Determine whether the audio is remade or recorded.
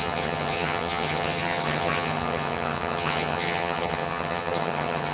remade